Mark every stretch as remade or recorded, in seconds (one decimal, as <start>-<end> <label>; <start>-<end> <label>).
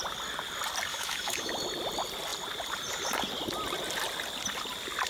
0.0-0.9 recorded; 0.9-1.5 remade; 1.5-5.1 recorded